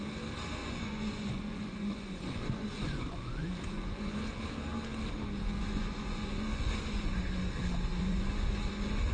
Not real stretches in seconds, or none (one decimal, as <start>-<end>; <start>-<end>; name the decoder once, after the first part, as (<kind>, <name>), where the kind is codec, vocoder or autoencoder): 0.6-4.4 (vocoder, Vocos); 5.4-7.2; 7.9-9.1